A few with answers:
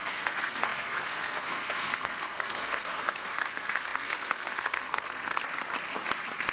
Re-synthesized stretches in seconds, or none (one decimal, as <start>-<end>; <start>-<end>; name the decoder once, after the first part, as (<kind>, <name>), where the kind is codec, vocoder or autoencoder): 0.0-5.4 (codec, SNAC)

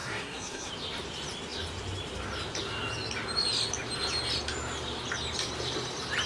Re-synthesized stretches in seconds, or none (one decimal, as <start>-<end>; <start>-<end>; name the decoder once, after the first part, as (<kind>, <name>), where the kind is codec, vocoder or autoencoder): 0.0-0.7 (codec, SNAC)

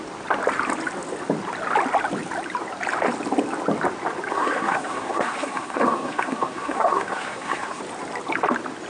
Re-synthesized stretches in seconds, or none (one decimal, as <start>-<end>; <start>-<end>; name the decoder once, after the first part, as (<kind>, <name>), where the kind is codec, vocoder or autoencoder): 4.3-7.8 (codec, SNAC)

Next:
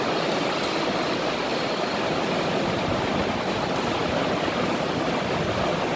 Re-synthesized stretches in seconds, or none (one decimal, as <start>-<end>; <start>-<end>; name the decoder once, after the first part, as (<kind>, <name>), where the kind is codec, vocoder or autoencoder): none

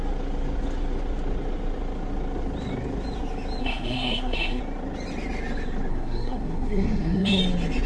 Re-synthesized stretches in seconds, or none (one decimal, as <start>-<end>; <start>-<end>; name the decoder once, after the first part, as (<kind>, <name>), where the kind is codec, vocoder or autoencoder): 3.6-4.6 (codec, SNAC); 5.9-7.4